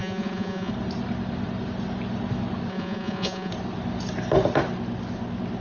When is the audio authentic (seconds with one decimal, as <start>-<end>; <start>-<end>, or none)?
0.7-2.7; 3.5-5.6